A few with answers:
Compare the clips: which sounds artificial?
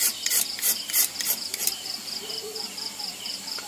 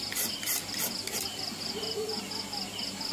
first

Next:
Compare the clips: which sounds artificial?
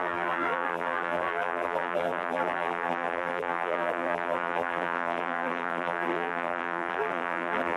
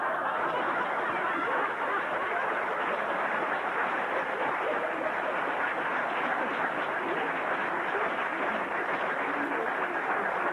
first